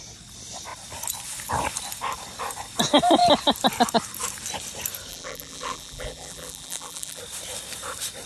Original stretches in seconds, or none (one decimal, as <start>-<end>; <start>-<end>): 0.0-5.1; 7.2-8.3